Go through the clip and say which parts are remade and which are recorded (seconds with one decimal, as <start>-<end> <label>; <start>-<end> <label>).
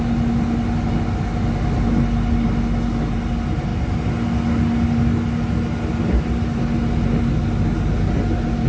0.0-8.7 recorded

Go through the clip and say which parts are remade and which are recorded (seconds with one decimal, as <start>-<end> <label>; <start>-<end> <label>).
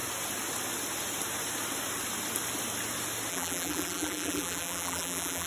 0.0-3.3 recorded; 3.3-5.5 remade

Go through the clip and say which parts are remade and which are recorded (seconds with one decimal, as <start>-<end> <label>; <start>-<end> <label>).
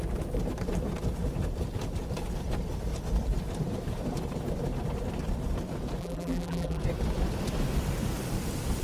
0.0-6.0 recorded; 6.0-6.8 remade; 6.8-8.8 recorded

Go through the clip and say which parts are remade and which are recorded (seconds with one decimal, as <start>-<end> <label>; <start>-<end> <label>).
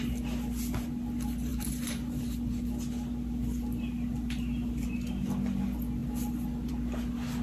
0.0-1.5 recorded; 1.5-2.2 remade; 2.2-7.4 recorded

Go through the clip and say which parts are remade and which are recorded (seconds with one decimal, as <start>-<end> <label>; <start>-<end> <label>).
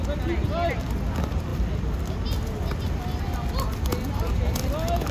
0.0-5.1 recorded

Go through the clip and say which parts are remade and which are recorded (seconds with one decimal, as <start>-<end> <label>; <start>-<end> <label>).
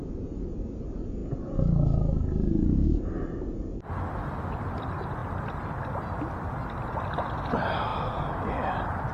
0.0-1.2 remade; 1.2-4.7 recorded; 4.7-7.9 remade; 7.9-8.4 recorded; 8.4-9.1 remade